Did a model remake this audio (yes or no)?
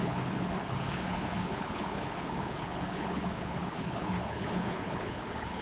yes